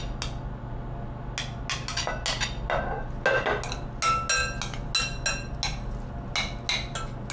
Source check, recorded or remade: recorded